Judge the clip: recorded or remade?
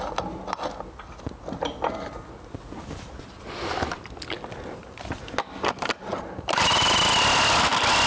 recorded